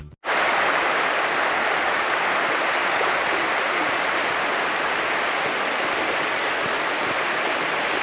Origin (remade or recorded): recorded